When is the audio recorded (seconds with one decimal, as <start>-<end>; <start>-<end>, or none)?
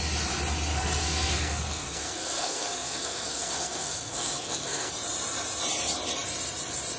0.0-0.7; 4.9-7.0